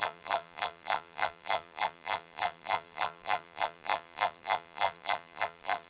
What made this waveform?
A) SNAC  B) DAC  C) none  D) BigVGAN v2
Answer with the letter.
D